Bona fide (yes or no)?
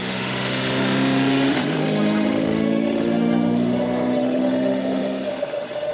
no